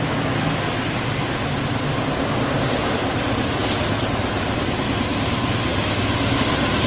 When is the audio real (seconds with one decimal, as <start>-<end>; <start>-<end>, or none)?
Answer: 0.0-6.9